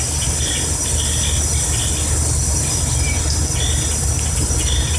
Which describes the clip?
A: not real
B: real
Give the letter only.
B